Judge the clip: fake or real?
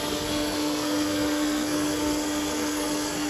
fake